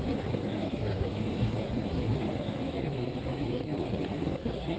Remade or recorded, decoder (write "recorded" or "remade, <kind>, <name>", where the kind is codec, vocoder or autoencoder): remade, codec, SNAC